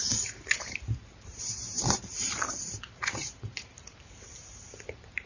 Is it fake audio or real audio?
fake